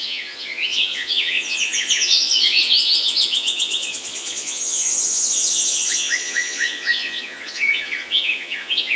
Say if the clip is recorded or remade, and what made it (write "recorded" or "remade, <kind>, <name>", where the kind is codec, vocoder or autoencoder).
remade, vocoder, Vocos